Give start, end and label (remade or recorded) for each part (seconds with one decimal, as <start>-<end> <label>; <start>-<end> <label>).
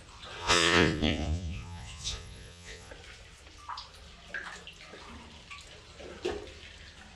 0.0-0.4 recorded; 0.4-2.9 remade; 2.9-7.2 recorded